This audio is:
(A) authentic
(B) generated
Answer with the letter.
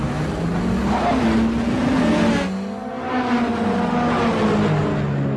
A